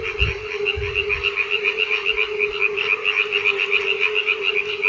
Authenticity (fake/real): real